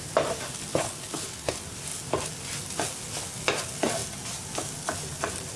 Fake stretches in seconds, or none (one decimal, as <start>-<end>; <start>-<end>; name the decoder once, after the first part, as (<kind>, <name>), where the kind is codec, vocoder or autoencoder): 0.7-1.5 (codec, HILCodec)